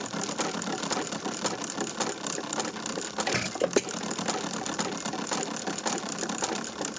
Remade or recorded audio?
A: recorded